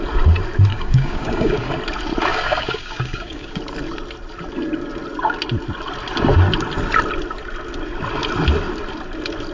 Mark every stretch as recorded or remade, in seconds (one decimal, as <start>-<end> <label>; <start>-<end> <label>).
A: 0.0-0.7 recorded; 0.7-1.8 remade; 1.8-2.3 recorded; 2.3-3.6 remade; 3.6-9.5 recorded